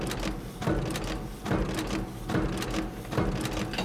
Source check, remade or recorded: recorded